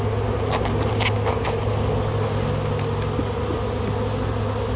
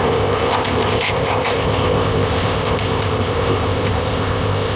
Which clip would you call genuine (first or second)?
first